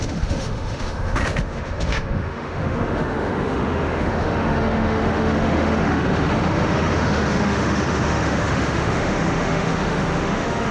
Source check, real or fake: fake